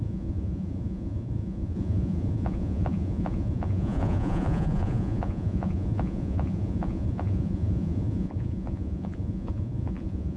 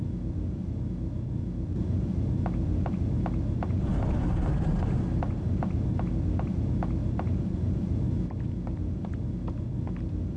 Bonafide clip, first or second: second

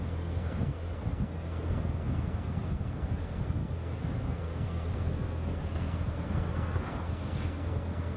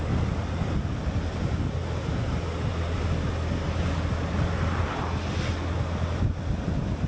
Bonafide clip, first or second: second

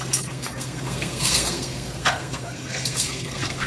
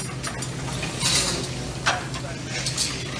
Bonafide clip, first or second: second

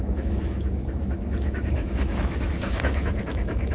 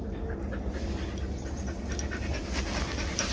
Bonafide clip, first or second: second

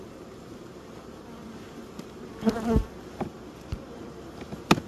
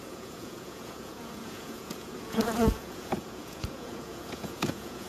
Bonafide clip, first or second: first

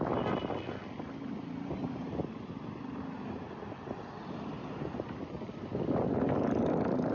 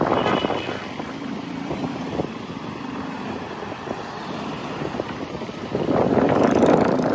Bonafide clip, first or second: first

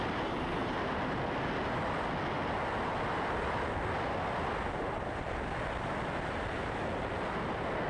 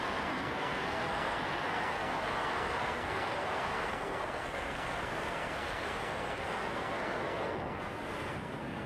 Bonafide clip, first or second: first